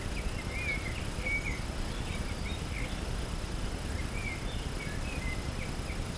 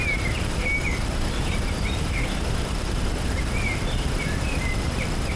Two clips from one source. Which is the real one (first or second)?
first